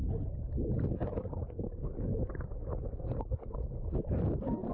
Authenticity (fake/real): real